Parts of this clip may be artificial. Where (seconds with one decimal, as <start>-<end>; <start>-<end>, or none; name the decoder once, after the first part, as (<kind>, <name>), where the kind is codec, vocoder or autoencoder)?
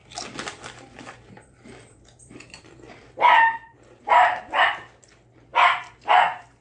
0.0-4.0 (vocoder, BigVGAN v2); 5.5-6.1